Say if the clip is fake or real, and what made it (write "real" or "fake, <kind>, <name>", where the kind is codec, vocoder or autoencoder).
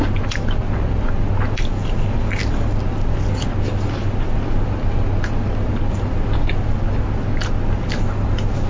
real